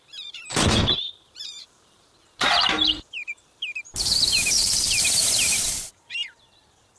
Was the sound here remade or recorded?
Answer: remade